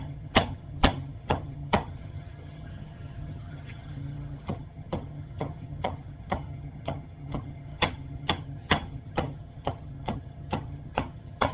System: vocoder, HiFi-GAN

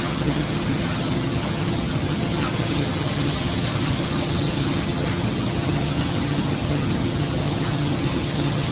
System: vocoder, HiFi-GAN